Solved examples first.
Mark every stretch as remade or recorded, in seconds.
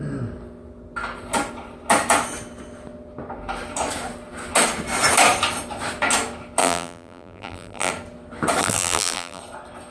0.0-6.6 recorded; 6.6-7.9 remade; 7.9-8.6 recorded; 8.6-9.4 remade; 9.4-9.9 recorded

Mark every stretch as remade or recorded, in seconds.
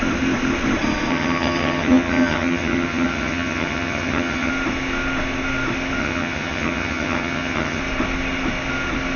0.0-1.1 recorded; 1.1-4.5 remade; 4.5-6.0 recorded; 6.0-7.8 remade; 7.8-9.2 recorded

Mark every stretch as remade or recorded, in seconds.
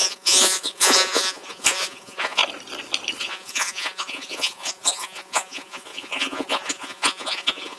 0.0-2.4 remade; 2.4-3.2 recorded; 3.2-7.8 remade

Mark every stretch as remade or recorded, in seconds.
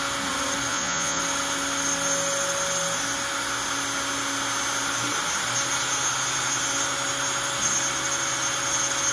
0.0-0.7 recorded; 0.7-1.2 remade; 1.2-9.1 recorded